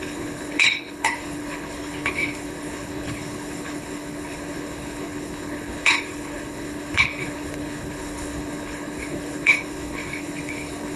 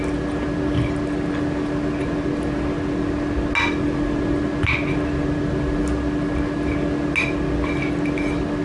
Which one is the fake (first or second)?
first